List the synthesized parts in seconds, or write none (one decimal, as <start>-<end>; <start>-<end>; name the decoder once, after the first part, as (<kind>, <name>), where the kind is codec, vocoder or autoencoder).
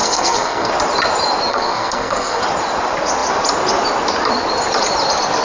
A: 0.0-0.7 (codec, SNAC); 1.5-2.4